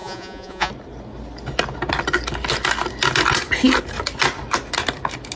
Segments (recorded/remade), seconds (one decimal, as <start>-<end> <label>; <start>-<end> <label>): 0.0-0.7 remade; 0.7-5.4 recorded